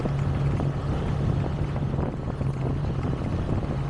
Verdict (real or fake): real